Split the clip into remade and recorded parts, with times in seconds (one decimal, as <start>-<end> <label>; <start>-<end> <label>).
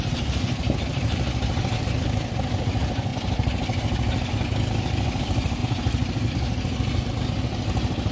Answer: 0.0-3.1 remade; 3.1-4.3 recorded; 4.3-5.6 remade; 5.6-6.3 recorded; 6.3-8.1 remade